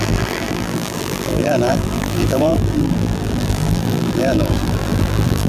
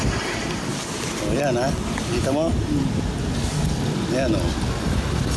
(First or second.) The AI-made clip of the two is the first